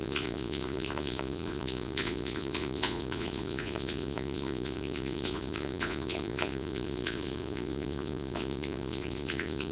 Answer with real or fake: fake